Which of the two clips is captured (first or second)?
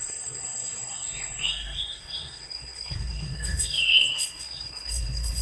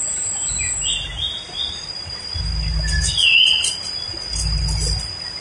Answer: second